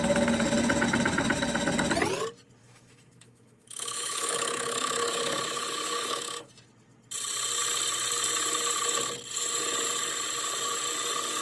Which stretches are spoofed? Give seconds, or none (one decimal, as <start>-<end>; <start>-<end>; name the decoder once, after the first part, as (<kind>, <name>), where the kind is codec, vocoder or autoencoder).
2.6-6.5 (autoencoder, DAC-VAE)